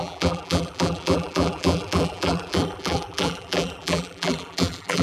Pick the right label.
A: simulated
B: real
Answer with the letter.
A